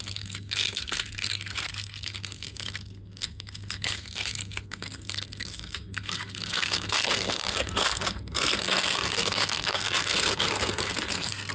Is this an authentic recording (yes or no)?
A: no